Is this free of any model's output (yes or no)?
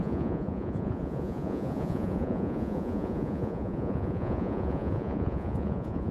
no